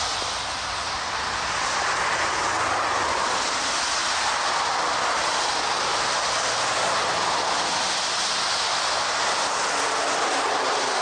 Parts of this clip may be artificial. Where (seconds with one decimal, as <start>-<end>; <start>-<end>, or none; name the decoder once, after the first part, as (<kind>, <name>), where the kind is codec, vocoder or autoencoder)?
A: none